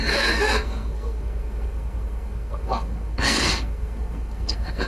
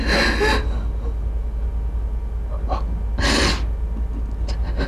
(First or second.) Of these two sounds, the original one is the second